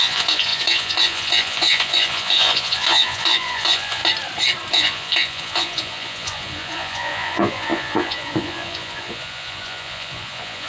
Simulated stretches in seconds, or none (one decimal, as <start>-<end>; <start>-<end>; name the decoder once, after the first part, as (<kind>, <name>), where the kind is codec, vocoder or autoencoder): 0.0-4.0 (vocoder, Vocos); 4.7-10.7